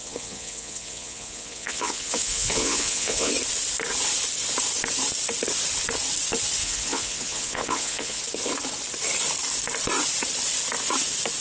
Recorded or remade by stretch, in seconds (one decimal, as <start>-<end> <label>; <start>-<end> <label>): 0.0-3.3 remade; 3.3-6.6 recorded; 6.6-8.2 remade; 8.2-11.4 recorded